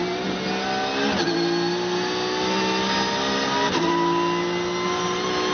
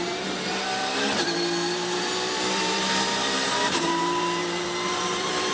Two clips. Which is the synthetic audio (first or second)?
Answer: second